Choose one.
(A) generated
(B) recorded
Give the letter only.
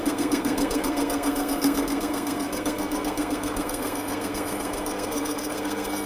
A